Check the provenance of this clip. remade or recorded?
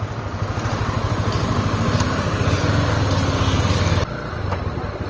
recorded